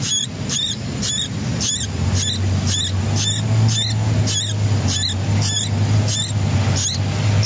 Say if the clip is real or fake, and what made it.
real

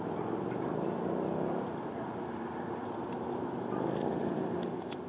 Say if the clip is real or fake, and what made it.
real